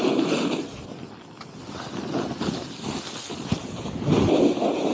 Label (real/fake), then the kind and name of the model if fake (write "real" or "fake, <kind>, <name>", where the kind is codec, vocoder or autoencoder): real